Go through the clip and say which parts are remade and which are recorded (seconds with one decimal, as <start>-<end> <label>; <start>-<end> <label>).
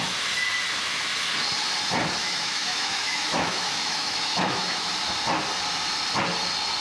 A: 0.0-2.2 recorded; 2.2-4.9 remade; 4.9-6.8 recorded